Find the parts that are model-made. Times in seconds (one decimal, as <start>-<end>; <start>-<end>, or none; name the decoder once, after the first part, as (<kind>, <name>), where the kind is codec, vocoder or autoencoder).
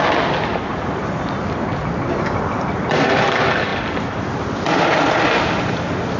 0.5-1.3 (vocoder, BigVGAN v2)